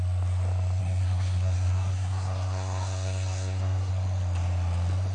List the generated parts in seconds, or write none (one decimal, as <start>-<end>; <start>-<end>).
0.8-3.9